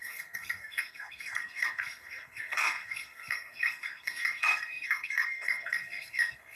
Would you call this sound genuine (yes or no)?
no